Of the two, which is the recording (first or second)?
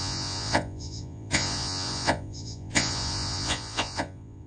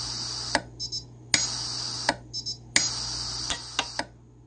second